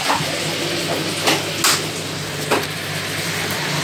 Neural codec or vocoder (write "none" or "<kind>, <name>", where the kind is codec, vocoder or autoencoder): none